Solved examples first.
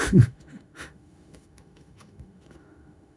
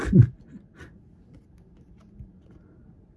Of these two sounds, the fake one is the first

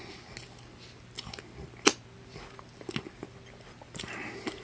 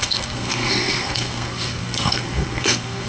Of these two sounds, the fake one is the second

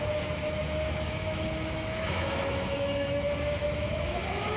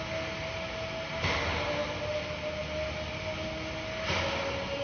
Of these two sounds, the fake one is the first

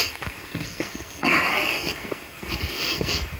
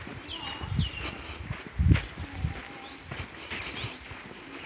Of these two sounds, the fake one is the first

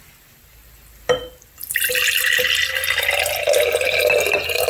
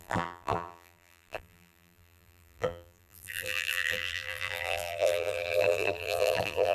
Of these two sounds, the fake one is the second